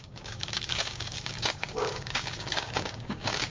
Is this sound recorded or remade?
remade